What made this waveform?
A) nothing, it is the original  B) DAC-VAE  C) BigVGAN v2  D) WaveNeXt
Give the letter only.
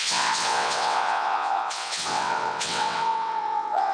D